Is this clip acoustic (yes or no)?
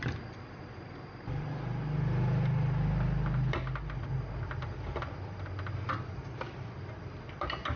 yes